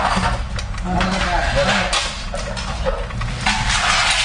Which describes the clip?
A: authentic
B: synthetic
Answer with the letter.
A